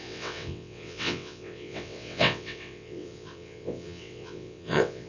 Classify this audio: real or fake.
fake